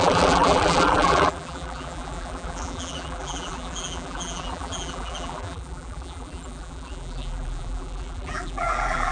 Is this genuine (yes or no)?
no